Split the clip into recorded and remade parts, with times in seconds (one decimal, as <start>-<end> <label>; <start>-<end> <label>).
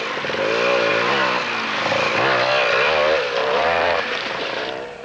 0.0-3.4 recorded; 3.4-5.0 remade